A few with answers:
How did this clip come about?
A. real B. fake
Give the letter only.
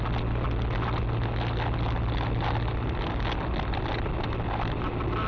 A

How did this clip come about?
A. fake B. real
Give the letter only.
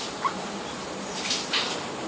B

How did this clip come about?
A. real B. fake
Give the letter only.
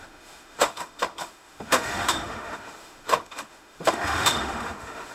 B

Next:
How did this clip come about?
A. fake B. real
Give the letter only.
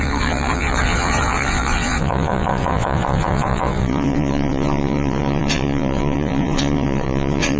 A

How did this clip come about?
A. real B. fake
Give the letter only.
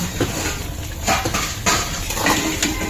A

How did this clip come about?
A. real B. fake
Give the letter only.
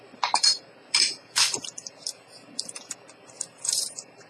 B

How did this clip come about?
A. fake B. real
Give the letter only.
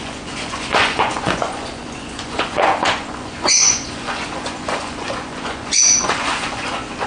A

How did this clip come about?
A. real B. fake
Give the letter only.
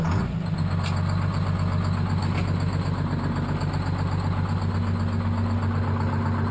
A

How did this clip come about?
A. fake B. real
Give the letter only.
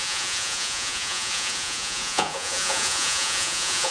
A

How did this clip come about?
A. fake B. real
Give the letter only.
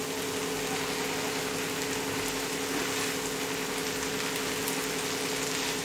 B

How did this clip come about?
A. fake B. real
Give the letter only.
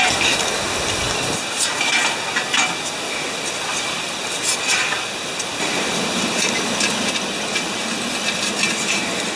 B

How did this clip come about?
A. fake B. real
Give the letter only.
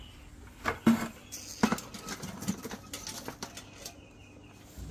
B